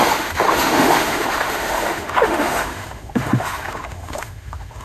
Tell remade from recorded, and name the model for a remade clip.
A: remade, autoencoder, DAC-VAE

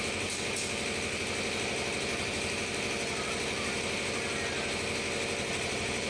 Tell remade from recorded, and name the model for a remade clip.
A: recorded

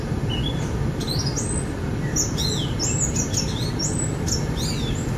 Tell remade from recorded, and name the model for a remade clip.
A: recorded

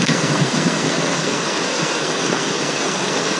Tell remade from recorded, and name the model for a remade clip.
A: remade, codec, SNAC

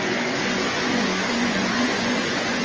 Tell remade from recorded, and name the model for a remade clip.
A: remade, vocoder, Vocos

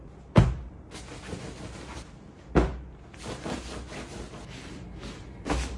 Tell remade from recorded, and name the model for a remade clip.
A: recorded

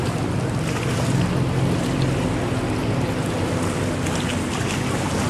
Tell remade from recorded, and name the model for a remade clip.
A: recorded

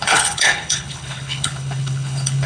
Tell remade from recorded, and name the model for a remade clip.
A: remade, codec, HILCodec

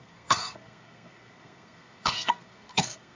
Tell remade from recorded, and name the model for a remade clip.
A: remade, codec, SNAC